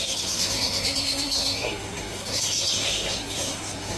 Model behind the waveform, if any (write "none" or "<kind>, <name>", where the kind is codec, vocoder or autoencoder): codec, SNAC